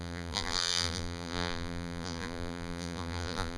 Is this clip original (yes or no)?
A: no